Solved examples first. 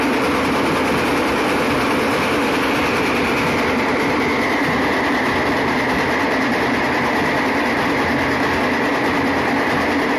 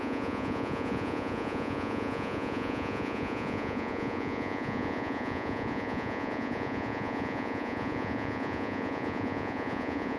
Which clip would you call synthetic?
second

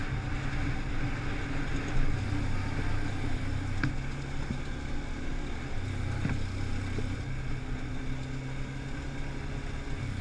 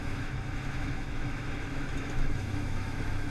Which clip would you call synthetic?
second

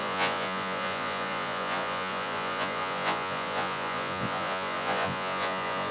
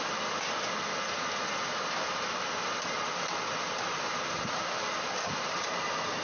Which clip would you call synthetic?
first